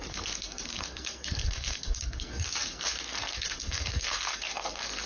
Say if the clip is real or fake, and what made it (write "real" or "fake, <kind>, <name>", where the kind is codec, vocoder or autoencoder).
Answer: fake, codec, SNAC